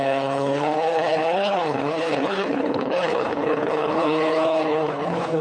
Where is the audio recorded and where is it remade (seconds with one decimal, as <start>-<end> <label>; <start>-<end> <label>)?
0.0-5.4 remade